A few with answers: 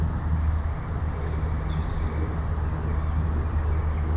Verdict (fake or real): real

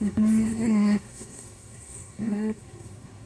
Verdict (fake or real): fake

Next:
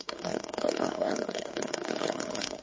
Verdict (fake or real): fake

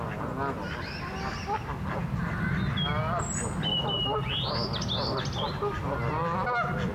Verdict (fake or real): real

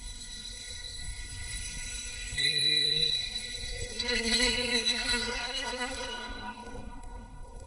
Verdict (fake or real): fake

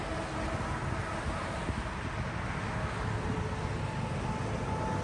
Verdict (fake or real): real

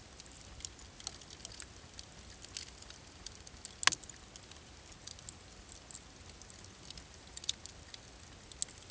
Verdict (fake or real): real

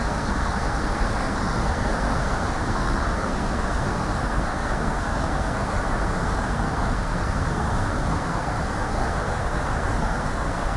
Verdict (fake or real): fake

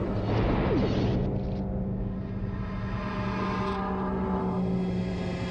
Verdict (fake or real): real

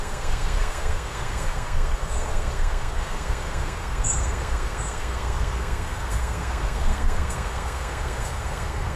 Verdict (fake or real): fake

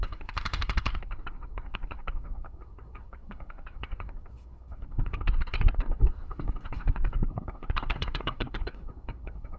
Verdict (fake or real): fake